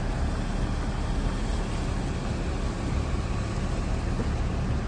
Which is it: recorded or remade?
recorded